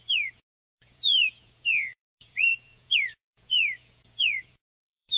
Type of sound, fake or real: fake